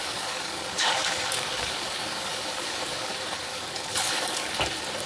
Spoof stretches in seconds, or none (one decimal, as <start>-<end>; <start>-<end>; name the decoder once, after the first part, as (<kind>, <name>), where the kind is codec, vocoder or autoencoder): 0.0-3.1 (codec, DAC); 3.5-4.5

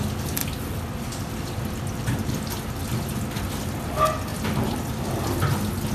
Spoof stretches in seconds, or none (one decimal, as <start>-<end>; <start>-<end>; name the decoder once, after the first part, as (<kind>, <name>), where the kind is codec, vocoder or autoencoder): none

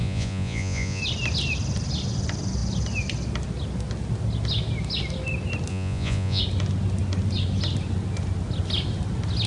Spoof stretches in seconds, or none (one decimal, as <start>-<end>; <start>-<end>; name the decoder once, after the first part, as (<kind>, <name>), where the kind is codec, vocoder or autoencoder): 0.0-1.0 (vocoder, Vocos); 5.7-6.4

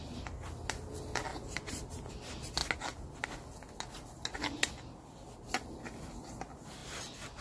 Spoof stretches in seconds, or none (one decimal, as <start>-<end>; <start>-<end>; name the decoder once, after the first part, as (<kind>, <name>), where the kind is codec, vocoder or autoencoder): 1.3-2.1 (vocoder, BigVGAN v2)

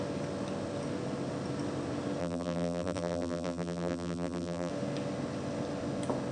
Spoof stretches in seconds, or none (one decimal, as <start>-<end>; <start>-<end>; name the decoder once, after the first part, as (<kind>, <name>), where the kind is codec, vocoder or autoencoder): 2.2-4.7 (vocoder, BigVGAN v2)